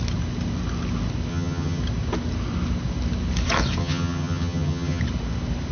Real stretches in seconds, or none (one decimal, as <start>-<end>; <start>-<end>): 0.0-1.3; 1.8-3.8; 5.0-5.7